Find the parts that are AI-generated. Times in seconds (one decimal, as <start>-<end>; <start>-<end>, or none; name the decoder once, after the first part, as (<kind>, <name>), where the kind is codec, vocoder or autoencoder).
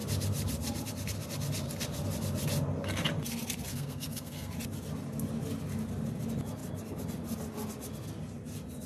3.7-4.5 (codec, SNAC)